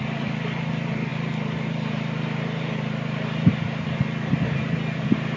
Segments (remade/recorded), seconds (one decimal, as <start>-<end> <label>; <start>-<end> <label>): 0.0-5.4 recorded